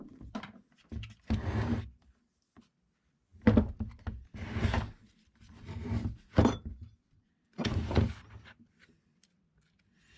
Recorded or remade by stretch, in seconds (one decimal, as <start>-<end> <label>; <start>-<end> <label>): 0.0-10.2 recorded